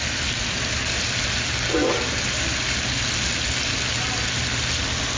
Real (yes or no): yes